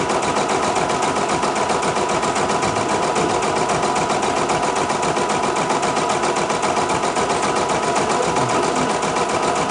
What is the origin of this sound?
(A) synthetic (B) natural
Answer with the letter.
B